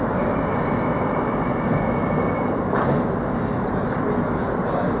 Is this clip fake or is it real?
real